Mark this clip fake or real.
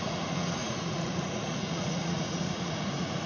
fake